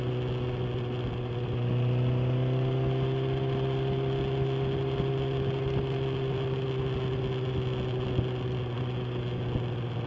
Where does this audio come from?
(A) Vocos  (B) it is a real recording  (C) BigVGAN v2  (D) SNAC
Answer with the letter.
B